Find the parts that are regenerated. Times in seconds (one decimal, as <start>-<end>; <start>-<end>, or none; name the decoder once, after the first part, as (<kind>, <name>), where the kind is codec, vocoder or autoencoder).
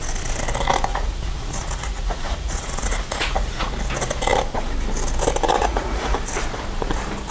0.9-3.7 (vocoder, Vocos); 5.6-6.2